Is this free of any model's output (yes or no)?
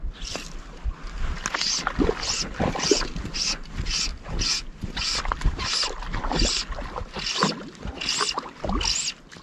yes